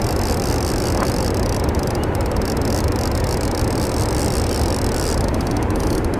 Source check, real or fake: real